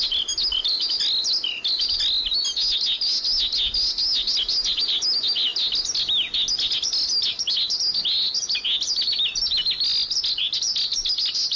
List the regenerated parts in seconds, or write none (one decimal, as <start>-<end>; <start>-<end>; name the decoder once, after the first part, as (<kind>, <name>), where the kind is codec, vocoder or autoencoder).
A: none